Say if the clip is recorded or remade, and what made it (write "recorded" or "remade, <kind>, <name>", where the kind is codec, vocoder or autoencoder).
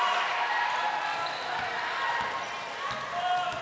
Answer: recorded